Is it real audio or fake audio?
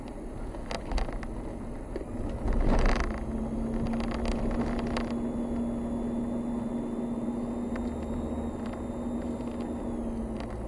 real